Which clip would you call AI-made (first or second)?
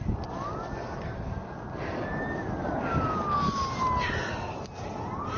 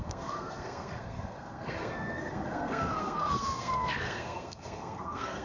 second